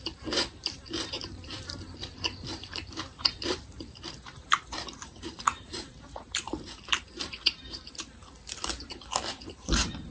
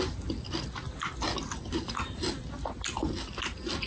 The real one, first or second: second